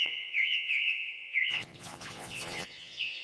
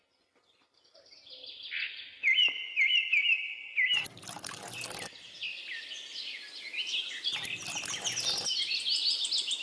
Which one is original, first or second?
second